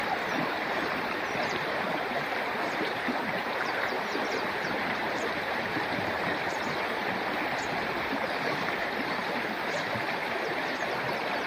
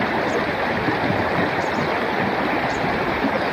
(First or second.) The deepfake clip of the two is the first